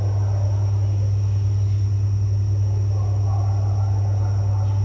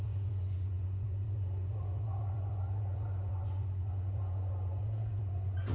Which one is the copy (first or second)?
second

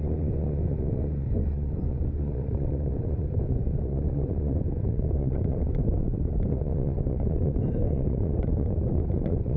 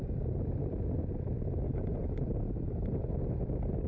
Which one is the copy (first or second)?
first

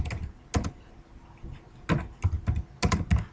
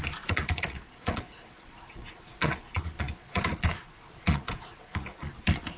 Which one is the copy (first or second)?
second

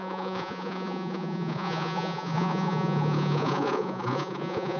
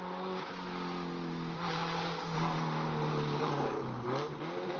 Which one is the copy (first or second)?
first